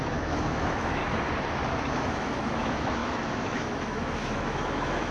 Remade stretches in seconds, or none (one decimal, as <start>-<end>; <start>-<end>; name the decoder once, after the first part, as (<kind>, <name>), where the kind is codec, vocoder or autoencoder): 0.0-1.0 (autoencoder, DAC-VAE); 1.9-5.1